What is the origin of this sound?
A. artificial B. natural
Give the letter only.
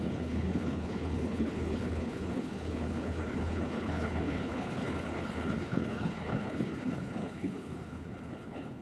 A